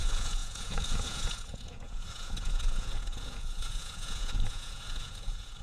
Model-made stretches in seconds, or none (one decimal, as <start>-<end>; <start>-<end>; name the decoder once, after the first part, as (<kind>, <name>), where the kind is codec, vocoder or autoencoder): 0.0-5.6 (vocoder, Vocos)